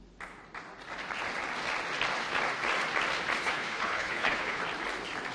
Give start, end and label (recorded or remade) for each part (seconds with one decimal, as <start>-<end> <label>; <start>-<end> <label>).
0.0-3.4 recorded; 3.4-4.6 remade; 4.6-5.3 recorded